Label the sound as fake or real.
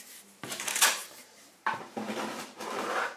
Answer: fake